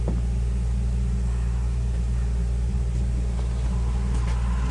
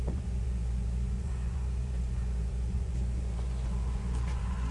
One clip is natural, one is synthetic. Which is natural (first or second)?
first